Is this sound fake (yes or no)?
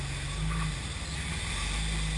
no